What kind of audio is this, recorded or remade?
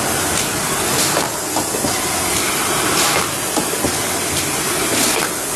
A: recorded